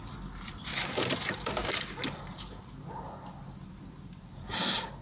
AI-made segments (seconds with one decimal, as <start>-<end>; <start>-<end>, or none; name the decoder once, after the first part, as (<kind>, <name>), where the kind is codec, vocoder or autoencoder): 0.0-1.6 (vocoder, BigVGAN v2); 3.8-5.0